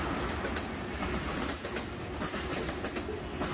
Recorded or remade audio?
recorded